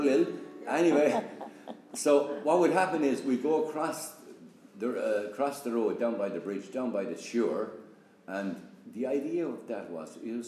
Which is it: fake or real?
real